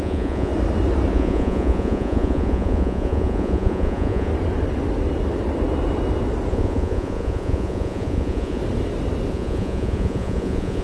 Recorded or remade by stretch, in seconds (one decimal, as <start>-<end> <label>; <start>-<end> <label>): 0.0-0.5 remade; 0.5-1.1 recorded; 1.1-4.3 remade; 4.3-6.5 recorded; 6.5-8.6 remade; 8.6-9.3 recorded; 9.3-10.8 remade